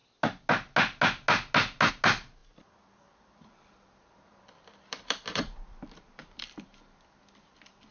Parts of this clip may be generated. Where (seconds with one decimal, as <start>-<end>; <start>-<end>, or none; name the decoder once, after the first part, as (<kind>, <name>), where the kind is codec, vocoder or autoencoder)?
2.4-7.0 (vocoder, BigVGAN v2)